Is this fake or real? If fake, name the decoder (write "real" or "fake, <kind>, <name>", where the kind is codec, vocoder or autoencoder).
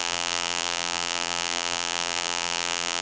fake, vocoder, BigVGAN v2